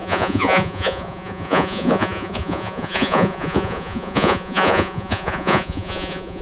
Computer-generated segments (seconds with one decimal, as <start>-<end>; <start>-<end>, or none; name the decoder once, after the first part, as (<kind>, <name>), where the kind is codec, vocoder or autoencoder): 0.0-6.4 (vocoder, Vocos)